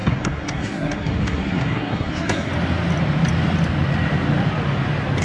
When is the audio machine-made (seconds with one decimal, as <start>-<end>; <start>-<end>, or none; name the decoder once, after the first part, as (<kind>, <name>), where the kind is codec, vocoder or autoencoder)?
0.0-2.5 (codec, SNAC)